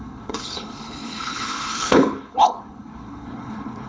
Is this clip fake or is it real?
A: fake